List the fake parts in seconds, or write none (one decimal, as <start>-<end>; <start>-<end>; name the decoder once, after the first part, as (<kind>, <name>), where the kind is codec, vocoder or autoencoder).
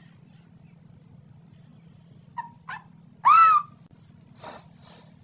none